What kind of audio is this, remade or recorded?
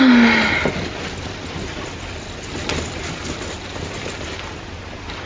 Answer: recorded